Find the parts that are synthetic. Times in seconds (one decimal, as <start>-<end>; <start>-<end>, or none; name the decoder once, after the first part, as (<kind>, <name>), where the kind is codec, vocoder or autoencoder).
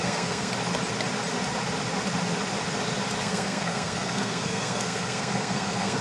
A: 0.0-0.5 (codec, SNAC); 3.2-6.0